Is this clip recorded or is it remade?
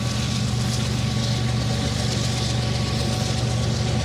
recorded